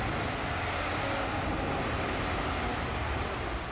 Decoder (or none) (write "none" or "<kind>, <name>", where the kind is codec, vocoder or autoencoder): none